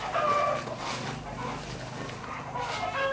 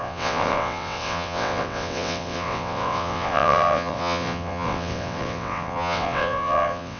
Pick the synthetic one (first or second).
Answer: second